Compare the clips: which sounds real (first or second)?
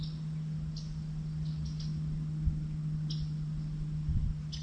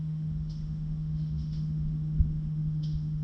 first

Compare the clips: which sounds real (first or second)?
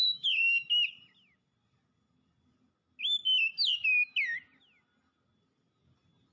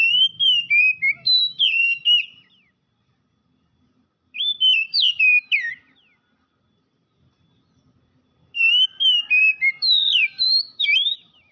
first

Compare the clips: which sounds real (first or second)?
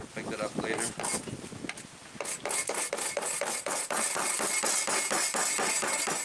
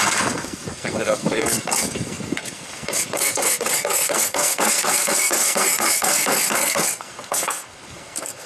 first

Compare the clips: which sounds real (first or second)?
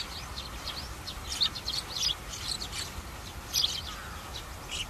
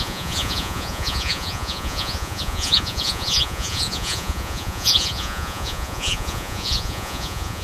first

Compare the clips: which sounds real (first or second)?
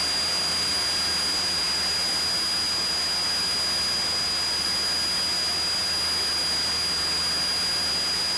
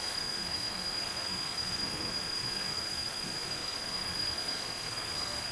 first